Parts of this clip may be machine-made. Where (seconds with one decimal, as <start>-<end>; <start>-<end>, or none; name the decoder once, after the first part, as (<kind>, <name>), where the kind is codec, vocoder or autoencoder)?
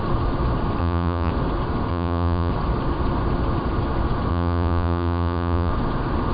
0.8-1.3 (vocoder, Vocos); 1.9-2.5; 4.3-5.7